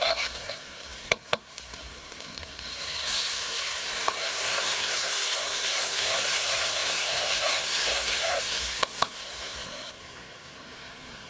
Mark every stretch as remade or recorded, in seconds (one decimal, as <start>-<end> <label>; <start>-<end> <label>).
0.0-11.3 remade

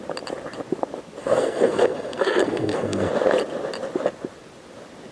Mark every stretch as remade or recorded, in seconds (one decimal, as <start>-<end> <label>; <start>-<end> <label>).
0.0-1.2 recorded; 1.2-3.1 remade; 3.1-5.1 recorded

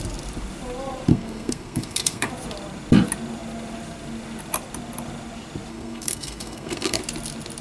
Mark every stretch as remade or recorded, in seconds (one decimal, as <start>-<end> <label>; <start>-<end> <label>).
0.0-1.1 recorded; 1.1-2.3 remade; 2.3-5.7 recorded; 5.7-7.0 remade; 7.0-7.6 recorded

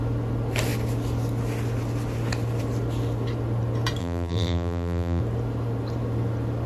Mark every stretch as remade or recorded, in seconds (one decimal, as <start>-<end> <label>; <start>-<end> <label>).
0.0-4.0 recorded; 4.0-5.2 remade; 5.2-6.7 recorded

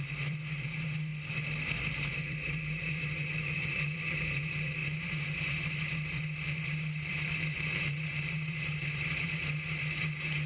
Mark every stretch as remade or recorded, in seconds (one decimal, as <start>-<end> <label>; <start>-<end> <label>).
0.0-1.1 remade; 1.1-2.1 recorded; 2.1-9.4 remade; 9.4-10.0 recorded; 10.0-10.5 remade

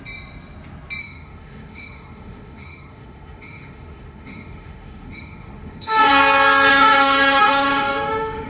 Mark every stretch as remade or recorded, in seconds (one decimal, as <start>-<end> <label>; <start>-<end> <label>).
0.0-1.0 recorded; 1.0-6.1 remade; 6.1-6.7 recorded; 6.7-8.5 remade

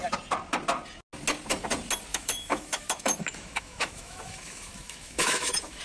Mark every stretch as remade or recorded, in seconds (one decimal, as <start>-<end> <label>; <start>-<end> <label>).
0.0-2.1 recorded; 2.1-5.8 remade

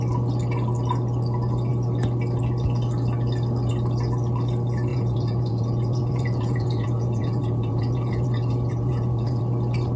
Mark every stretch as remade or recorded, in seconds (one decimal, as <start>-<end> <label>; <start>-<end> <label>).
0.0-4.9 recorded; 4.9-9.4 remade; 9.4-10.0 recorded